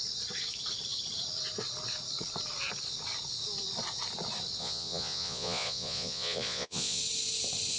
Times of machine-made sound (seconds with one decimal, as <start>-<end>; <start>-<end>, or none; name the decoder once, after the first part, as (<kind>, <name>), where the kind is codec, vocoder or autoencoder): 4.6-7.0 (vocoder, Vocos)